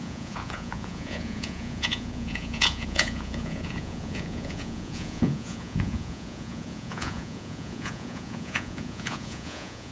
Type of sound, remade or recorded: remade